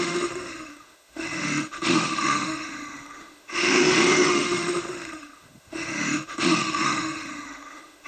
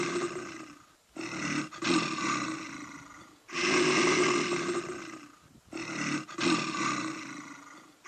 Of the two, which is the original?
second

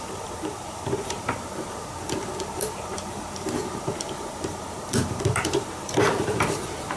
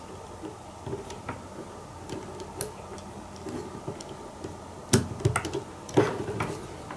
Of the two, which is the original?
second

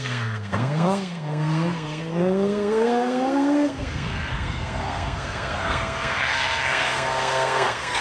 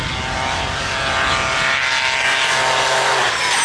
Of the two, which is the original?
second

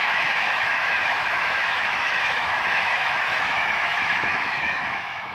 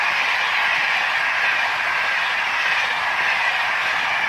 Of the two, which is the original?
second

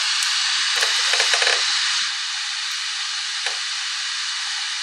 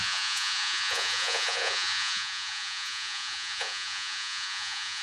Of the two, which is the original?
first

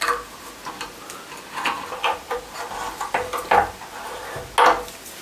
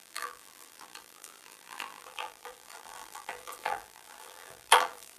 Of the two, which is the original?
first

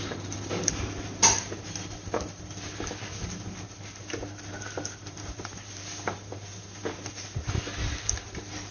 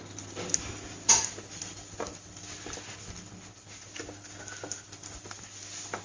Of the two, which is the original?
second